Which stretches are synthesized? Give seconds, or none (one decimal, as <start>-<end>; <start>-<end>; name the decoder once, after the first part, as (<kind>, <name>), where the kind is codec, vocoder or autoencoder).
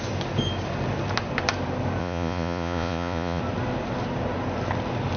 2.0-3.4 (vocoder, Vocos)